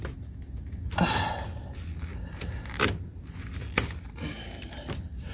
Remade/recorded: recorded